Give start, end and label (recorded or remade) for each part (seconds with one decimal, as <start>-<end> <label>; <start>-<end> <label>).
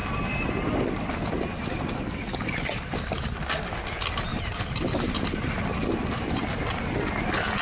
0.0-4.3 recorded; 4.3-5.6 remade; 5.6-7.6 recorded